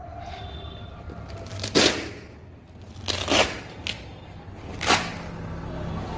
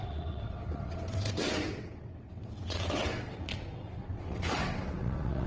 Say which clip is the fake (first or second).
second